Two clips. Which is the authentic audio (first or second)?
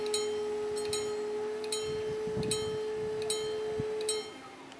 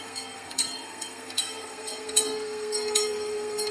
first